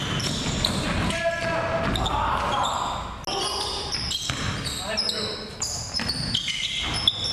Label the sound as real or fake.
real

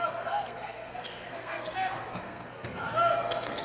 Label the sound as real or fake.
fake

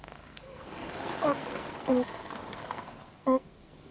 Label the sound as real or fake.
fake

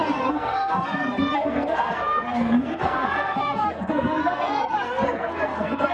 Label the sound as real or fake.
fake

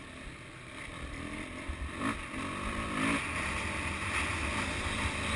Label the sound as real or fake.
real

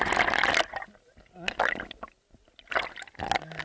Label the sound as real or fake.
real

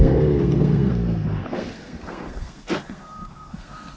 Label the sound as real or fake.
fake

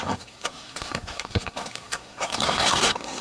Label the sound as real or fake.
fake